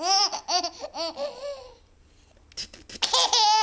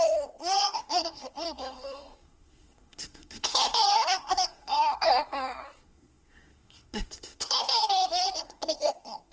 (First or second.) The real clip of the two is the first